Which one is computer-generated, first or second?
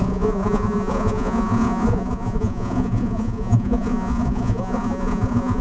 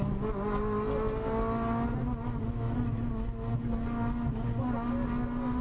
first